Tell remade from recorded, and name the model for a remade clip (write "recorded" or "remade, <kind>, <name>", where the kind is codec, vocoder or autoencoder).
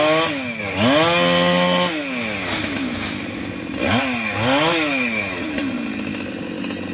recorded